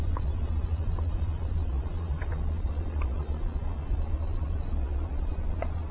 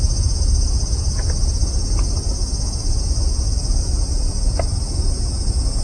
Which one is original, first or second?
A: second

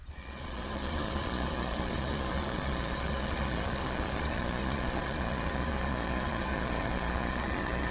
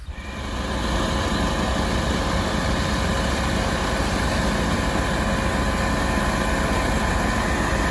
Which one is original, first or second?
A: second